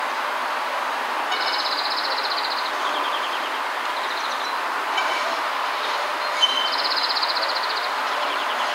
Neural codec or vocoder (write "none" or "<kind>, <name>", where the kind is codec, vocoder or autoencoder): none